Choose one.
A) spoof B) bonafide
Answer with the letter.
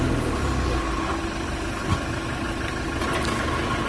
B